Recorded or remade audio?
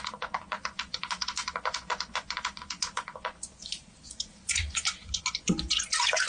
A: remade